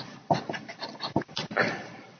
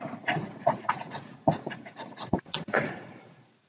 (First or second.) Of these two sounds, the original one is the first